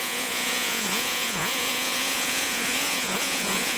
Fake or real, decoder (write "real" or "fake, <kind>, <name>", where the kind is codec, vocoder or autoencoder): fake, vocoder, Vocos